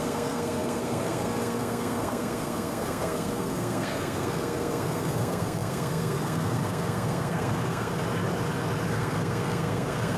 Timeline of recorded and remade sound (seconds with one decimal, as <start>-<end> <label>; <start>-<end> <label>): 0.0-7.9 remade; 7.9-8.9 recorded; 8.9-10.2 remade